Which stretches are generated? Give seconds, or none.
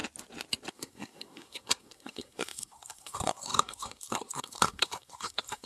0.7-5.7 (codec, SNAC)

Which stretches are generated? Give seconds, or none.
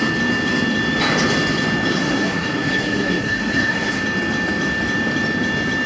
1.9-4.0 (codec, SNAC)